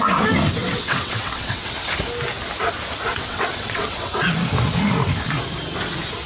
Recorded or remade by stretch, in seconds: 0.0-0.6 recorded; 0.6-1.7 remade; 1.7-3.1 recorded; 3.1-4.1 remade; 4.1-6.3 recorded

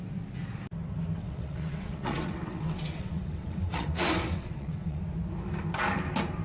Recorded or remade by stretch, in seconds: 0.0-1.2 recorded; 1.2-5.0 remade; 5.0-6.4 recorded

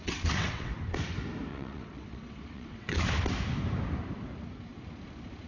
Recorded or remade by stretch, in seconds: 0.0-0.7 remade; 0.7-1.5 recorded; 1.5-3.0 remade; 3.0-5.5 recorded

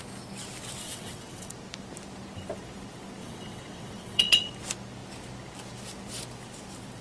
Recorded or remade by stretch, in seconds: 0.0-0.8 recorded; 0.8-1.5 remade; 1.5-3.2 recorded; 3.2-4.5 remade; 4.5-7.0 recorded

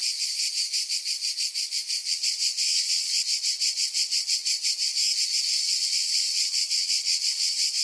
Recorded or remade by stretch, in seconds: 0.0-2.1 recorded; 2.1-4.4 remade; 4.4-5.6 recorded; 5.6-7.8 remade

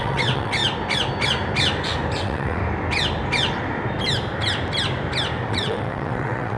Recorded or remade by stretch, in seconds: 0.0-0.6 remade; 0.6-2.2 recorded; 2.2-2.6 remade; 2.6-5.5 recorded; 5.5-6.6 remade

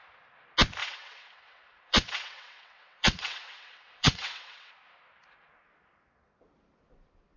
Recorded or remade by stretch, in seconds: 0.0-0.8 recorded; 0.8-4.7 remade; 4.7-7.4 recorded